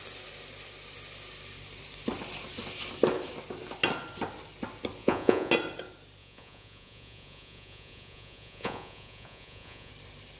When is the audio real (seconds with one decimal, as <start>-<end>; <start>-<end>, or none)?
0.0-5.0; 5.5-6.2; 9.9-10.4